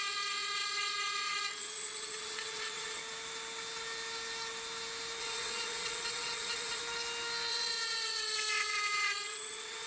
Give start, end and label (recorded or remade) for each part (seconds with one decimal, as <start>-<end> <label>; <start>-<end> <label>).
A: 0.0-3.0 remade; 3.0-5.2 recorded; 5.2-6.8 remade; 6.8-7.5 recorded; 7.5-9.9 remade